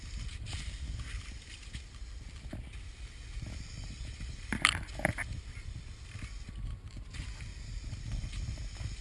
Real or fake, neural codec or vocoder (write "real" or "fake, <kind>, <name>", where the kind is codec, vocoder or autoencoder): real